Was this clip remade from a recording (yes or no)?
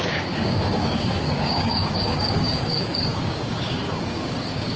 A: yes